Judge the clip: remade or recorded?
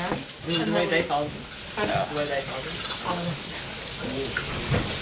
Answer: recorded